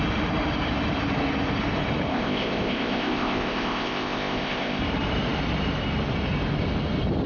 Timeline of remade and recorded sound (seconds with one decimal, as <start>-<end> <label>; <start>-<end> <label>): 0.0-2.1 recorded; 2.1-4.8 remade; 4.8-7.3 recorded